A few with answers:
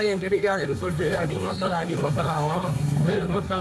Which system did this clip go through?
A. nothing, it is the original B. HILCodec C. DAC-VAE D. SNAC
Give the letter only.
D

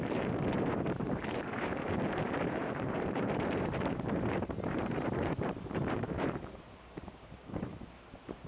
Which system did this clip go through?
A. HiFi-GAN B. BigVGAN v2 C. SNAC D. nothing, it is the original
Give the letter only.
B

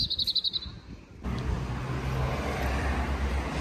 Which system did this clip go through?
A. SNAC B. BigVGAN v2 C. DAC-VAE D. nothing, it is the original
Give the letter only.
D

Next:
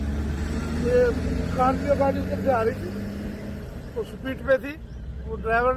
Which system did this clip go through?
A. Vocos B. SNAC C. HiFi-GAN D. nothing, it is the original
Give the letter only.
D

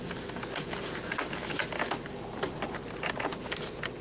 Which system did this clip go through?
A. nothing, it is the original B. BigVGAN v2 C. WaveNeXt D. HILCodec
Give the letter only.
A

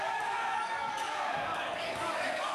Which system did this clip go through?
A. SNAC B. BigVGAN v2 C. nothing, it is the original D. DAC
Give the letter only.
D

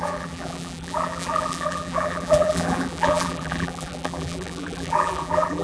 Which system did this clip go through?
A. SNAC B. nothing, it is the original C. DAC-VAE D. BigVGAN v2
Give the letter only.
D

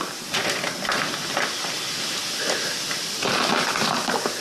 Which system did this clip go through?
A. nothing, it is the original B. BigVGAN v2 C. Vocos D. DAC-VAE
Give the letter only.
A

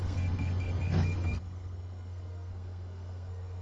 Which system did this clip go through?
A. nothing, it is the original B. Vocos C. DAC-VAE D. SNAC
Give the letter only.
D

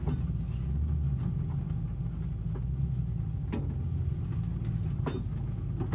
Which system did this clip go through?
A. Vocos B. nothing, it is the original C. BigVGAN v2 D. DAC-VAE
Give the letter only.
B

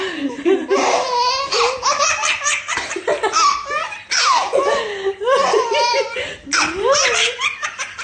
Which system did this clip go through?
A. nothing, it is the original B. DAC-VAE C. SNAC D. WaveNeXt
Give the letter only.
A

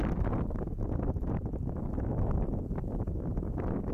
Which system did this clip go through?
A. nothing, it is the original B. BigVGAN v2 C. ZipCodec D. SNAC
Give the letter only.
A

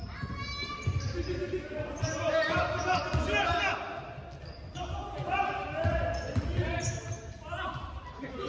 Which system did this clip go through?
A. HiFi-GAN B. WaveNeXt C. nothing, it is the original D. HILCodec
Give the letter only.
C